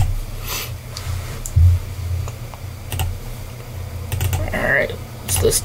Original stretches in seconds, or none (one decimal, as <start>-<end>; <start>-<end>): 1.6-5.6